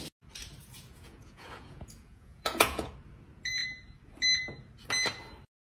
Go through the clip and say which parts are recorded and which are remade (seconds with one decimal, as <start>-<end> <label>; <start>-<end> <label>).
0.0-0.6 recorded; 0.6-2.9 remade; 2.9-5.7 recorded